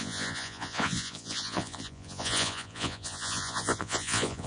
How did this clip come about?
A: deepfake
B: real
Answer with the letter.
A